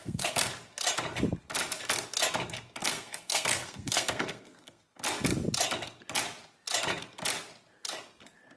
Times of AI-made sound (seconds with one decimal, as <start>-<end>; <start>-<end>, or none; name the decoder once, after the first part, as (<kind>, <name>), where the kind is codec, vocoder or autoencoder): 0.0-0.5 (codec, SNAC); 2.8-4.8